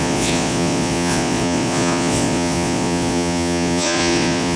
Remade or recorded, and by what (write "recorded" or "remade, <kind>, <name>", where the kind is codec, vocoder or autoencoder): remade, vocoder, Vocos